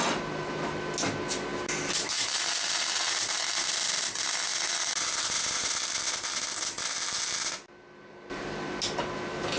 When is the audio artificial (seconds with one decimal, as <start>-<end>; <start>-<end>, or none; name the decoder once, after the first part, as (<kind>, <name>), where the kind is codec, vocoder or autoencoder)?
none